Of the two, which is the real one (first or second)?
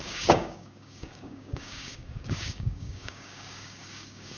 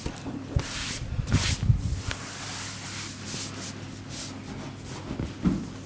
second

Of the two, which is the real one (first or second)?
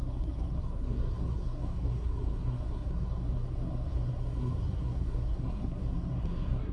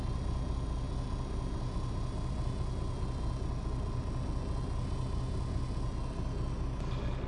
second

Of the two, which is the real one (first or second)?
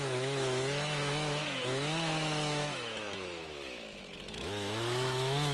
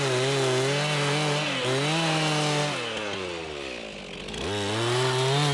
second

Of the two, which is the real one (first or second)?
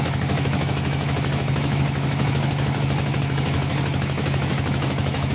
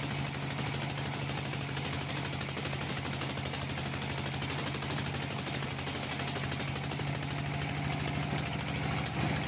second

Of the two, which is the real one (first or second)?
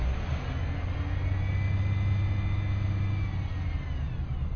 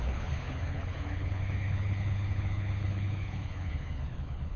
first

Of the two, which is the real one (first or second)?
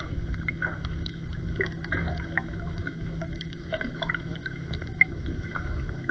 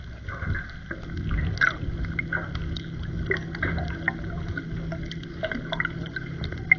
second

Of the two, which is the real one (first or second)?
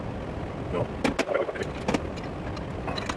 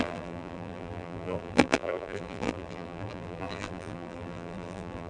first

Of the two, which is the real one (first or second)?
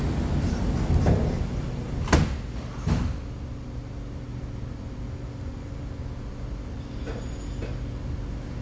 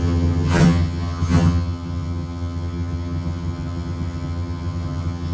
first